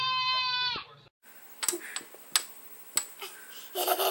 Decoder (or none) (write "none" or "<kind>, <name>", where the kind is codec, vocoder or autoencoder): none